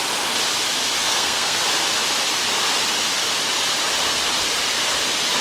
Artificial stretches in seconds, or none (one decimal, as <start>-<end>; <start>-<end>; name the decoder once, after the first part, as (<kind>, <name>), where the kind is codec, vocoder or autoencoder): 1.0-1.6 (codec, SNAC)